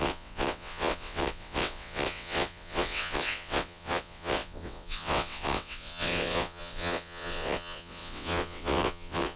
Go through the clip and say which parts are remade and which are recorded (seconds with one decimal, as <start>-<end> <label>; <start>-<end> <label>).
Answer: 0.0-9.4 remade